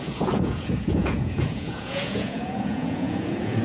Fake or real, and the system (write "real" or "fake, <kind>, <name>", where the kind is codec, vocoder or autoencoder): fake, vocoder, Vocos